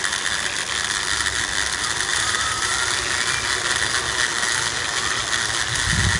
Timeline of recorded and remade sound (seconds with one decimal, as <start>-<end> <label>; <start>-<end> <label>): 0.0-2.1 recorded; 2.1-2.7 remade; 2.7-6.2 recorded